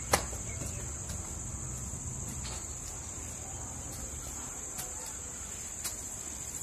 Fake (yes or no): no